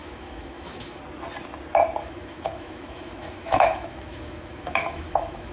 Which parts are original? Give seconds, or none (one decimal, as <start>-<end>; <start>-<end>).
1.0-2.0